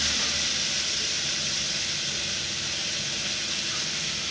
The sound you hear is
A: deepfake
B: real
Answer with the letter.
B